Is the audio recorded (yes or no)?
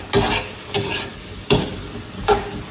yes